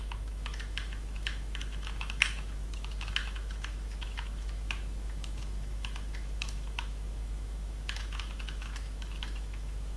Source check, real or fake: fake